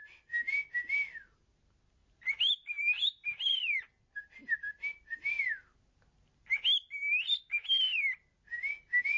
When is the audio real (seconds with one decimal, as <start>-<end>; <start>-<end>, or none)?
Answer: 0.0-2.0; 3.8-9.2